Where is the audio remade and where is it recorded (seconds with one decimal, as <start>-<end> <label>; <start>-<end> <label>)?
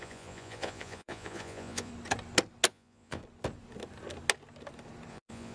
0.0-1.9 remade; 1.9-2.7 recorded; 2.7-3.2 remade; 3.2-5.1 recorded; 5.1-5.5 remade